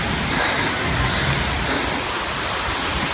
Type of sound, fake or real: real